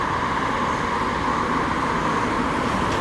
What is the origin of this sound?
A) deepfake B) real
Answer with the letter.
B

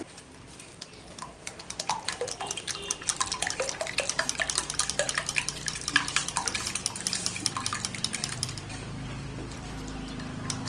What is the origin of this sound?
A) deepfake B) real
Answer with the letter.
A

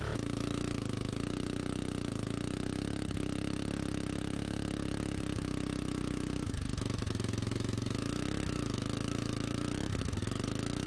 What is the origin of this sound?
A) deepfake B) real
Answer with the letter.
A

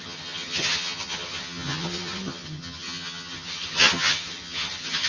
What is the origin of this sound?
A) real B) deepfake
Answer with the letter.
B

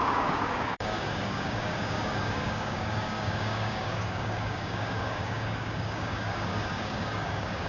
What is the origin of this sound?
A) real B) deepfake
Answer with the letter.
B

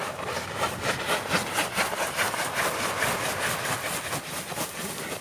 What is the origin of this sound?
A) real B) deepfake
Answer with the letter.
A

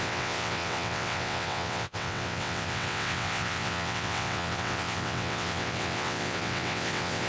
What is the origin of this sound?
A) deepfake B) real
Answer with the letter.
A